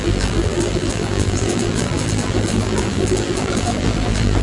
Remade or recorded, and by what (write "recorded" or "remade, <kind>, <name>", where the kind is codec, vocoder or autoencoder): remade, vocoder, BigVGAN v2